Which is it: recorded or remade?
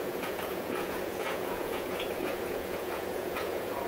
remade